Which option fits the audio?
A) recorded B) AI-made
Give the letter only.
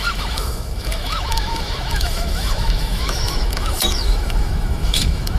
B